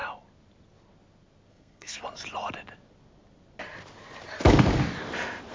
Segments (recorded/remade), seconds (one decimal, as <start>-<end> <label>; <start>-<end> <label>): 0.0-1.5 recorded; 1.5-2.0 remade; 2.0-5.5 recorded